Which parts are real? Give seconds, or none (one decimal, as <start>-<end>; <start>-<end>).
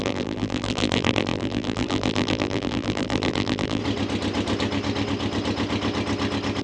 3.8-6.6